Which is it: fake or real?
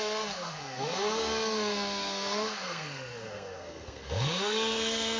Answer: fake